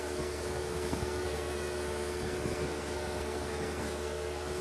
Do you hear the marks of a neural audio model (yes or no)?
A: yes